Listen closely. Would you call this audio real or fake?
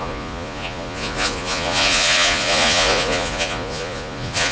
fake